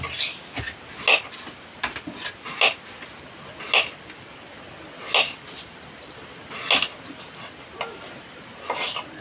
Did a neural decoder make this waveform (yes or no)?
no